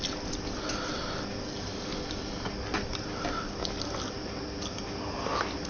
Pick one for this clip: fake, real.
real